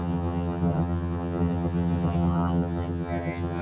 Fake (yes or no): yes